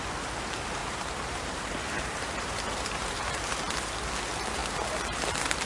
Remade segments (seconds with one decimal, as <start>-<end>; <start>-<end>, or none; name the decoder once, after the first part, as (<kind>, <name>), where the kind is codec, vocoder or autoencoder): 0.8-3.6 (vocoder, BigVGAN v2)